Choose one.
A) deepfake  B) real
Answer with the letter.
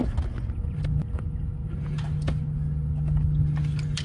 B